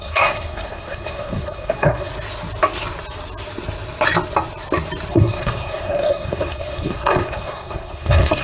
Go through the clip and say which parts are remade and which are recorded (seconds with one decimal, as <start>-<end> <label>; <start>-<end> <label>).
0.0-2.1 remade; 2.1-5.1 recorded; 5.1-8.4 remade